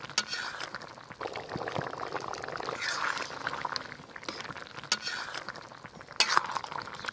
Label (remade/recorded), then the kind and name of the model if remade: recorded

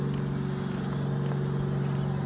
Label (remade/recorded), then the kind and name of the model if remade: recorded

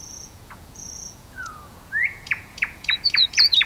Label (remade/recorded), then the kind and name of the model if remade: remade, vocoder, Vocos